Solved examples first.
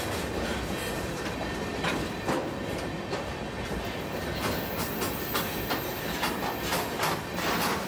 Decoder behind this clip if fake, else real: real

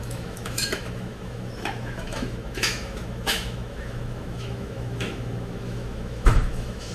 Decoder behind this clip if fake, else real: fake, autoencoder, DAC-VAE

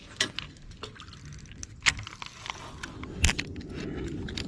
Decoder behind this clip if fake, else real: real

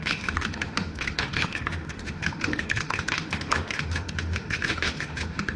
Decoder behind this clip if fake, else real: fake, autoencoder, DAC-VAE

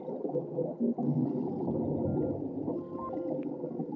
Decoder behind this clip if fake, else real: real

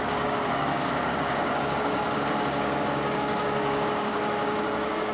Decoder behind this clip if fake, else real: fake, codec, DAC